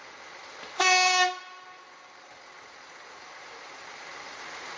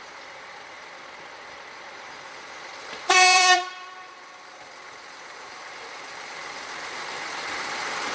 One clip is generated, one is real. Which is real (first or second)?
first